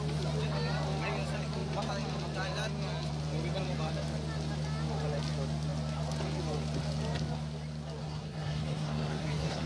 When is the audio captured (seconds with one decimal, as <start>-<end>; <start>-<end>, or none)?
0.0-8.0